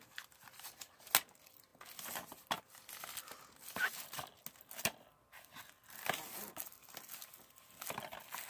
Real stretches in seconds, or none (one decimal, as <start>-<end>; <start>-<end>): 0.0-8.5